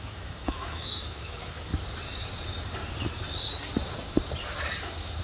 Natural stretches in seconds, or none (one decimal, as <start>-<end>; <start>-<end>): 1.7-4.8